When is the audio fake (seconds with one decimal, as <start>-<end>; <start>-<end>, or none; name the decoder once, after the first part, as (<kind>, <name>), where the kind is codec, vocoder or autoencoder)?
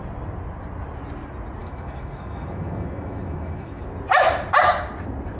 1.6-3.8 (autoencoder, DAC-VAE)